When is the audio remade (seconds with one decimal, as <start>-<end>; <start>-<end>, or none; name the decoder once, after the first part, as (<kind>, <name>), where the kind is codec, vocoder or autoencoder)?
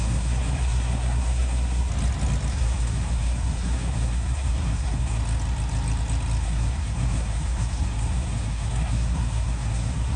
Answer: 0.0-1.9 (codec, SNAC); 2.5-5.2; 6.4-10.2